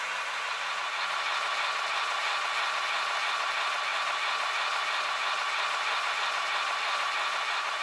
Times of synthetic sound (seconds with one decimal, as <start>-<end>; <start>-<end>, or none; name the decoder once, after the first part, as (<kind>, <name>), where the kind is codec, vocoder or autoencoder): none